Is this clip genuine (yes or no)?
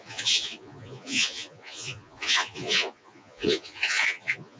no